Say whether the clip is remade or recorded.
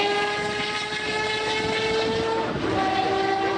recorded